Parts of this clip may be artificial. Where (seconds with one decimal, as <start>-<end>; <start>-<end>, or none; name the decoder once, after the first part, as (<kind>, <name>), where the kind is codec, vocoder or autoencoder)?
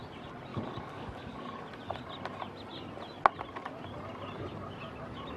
0.5-1.6 (codec, DAC)